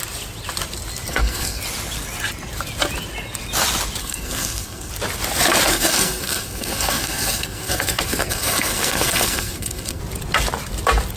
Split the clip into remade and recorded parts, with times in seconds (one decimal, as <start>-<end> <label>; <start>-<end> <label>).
0.0-1.1 recorded; 1.1-1.6 remade; 1.6-4.0 recorded; 4.0-4.9 remade; 4.9-5.7 recorded; 5.7-10.0 remade; 10.0-11.2 recorded